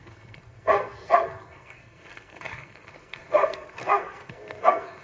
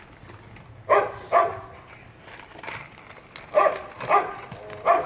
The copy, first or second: first